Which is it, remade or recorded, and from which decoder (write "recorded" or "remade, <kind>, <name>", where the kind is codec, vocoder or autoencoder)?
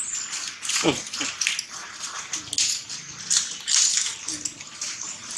recorded